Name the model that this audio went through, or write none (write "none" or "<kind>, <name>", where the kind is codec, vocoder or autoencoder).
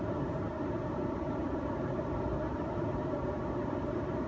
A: vocoder, BigVGAN v2